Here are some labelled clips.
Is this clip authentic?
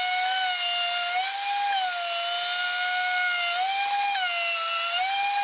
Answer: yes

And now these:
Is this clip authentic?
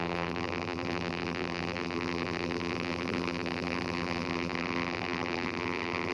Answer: no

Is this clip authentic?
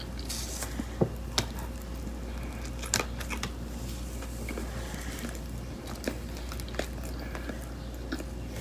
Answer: yes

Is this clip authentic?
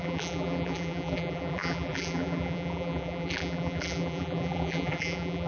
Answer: no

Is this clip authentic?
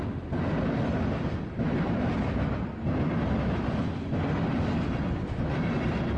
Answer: yes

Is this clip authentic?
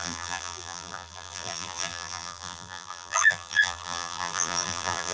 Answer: no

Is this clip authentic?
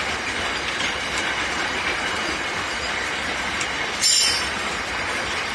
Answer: no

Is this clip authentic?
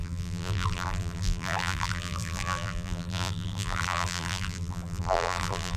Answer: no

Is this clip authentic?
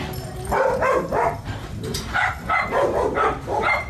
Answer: yes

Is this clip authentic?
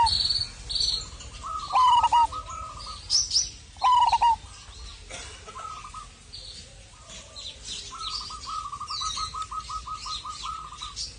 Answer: yes